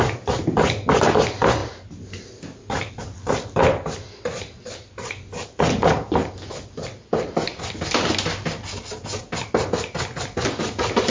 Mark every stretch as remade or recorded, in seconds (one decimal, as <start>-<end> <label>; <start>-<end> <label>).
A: 0.0-11.1 recorded